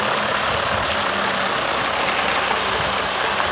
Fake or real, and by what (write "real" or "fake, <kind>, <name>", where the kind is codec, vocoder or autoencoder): real